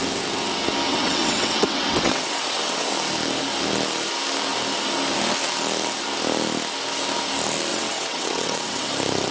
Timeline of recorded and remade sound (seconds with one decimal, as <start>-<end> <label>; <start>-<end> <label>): 0.0-0.9 recorded; 0.9-2.9 remade; 2.9-7.7 recorded; 7.7-8.9 remade; 8.9-9.3 recorded